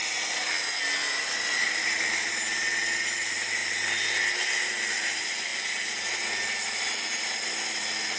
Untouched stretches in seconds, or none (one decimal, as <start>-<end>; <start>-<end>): 0.0-8.2